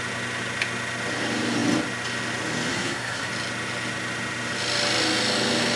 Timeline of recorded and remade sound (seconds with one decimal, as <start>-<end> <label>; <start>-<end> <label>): 0.0-2.7 recorded; 2.7-3.3 remade; 3.3-5.8 recorded